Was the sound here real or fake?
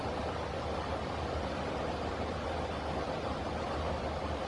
fake